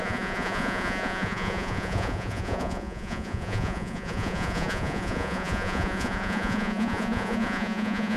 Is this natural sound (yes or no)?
no